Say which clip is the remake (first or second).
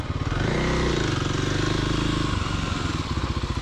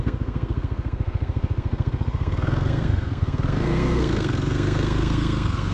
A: second